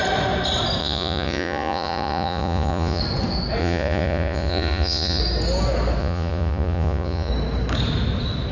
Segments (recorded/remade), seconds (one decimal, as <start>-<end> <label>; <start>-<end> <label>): 0.0-0.8 recorded; 0.8-3.0 remade; 3.0-3.6 recorded; 3.6-5.2 remade; 5.2-6.0 recorded; 6.0-7.3 remade; 7.3-8.5 recorded